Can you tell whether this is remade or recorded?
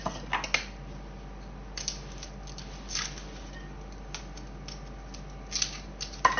recorded